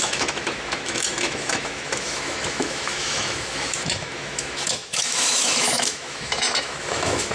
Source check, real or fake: fake